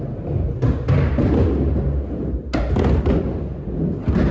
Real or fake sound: real